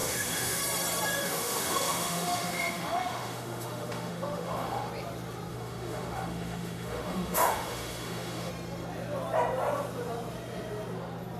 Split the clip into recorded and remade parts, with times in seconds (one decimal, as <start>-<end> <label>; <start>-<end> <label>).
0.0-0.6 remade; 0.6-1.2 recorded; 1.2-4.9 remade; 4.9-5.5 recorded; 5.5-8.5 remade; 8.5-11.4 recorded